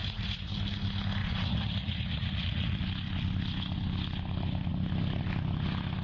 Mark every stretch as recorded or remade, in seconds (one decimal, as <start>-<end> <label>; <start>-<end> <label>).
0.0-0.5 remade; 0.5-1.2 recorded; 1.2-2.8 remade; 2.8-6.0 recorded